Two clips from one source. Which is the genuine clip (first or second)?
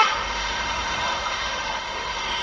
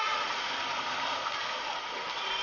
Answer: second